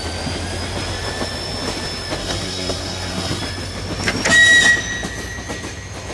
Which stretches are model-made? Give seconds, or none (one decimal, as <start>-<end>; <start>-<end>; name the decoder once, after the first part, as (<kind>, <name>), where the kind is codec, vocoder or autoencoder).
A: 2.2-3.4 (codec, SNAC)